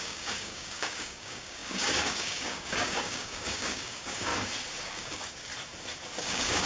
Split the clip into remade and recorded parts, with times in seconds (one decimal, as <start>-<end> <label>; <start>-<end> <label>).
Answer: 0.0-4.3 remade; 4.3-4.8 recorded; 4.8-5.5 remade; 5.5-6.2 recorded; 6.2-6.7 remade